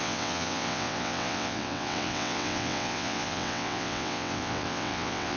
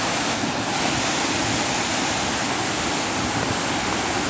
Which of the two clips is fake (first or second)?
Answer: first